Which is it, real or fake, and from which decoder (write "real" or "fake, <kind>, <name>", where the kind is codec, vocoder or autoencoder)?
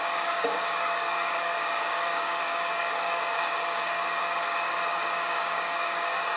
fake, codec, DAC